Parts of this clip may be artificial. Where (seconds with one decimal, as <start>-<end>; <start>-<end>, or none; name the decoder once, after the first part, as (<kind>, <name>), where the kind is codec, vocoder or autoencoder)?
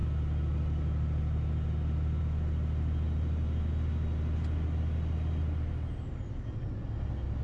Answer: none